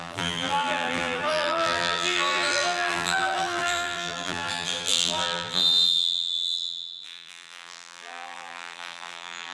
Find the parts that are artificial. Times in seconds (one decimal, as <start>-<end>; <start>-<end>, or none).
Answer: 0.0-9.5